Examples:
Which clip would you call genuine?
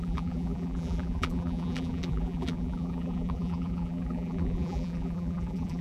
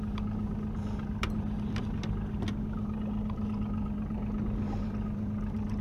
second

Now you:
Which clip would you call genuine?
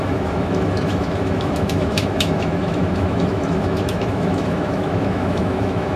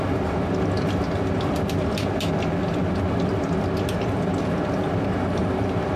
second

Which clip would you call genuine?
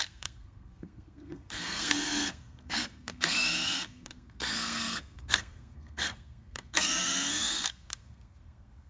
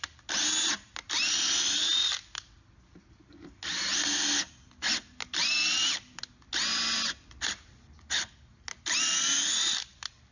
second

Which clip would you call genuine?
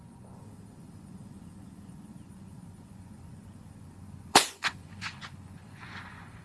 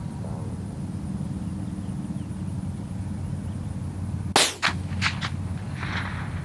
second